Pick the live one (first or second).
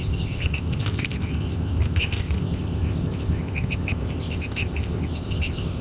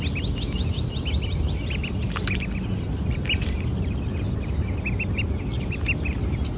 second